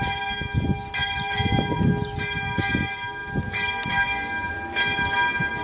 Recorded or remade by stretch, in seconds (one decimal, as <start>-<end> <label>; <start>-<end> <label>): 0.0-1.0 recorded; 1.0-1.9 remade; 1.9-5.6 recorded